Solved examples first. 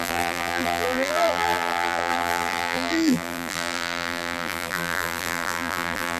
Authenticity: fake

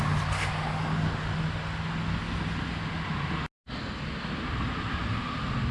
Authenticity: real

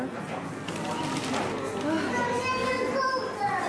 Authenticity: real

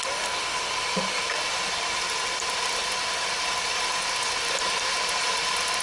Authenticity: real